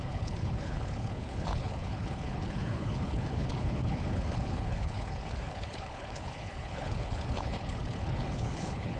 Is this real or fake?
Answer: fake